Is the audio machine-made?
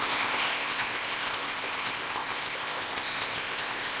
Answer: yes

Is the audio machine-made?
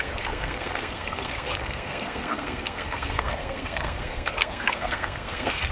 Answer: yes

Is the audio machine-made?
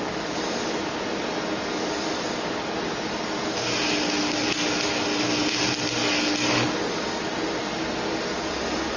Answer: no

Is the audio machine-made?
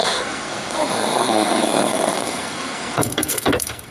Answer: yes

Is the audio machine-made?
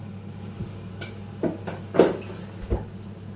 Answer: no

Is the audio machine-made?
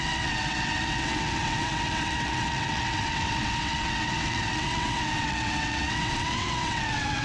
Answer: yes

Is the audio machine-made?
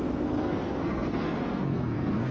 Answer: yes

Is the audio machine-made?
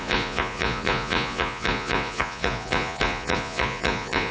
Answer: yes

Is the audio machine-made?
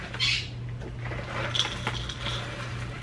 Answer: no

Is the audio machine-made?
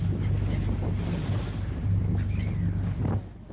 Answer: no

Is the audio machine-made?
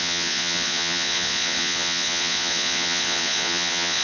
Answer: yes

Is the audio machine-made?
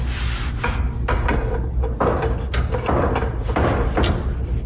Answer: no